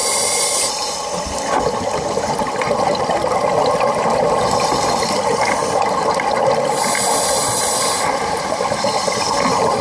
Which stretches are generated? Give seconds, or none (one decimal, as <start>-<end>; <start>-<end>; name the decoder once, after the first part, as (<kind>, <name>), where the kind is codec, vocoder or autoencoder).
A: none